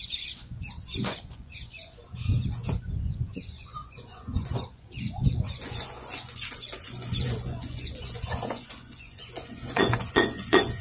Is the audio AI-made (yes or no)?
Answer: yes